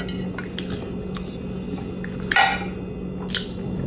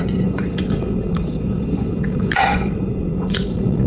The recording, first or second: first